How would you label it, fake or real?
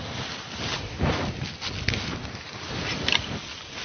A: real